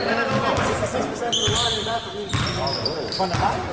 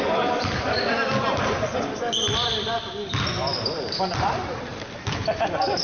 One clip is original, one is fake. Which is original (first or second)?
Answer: first